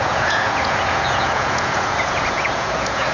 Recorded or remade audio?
remade